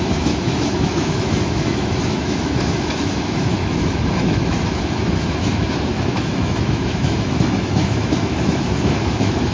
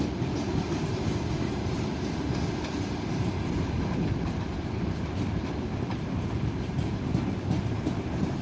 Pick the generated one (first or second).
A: first